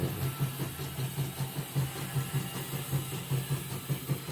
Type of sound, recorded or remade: recorded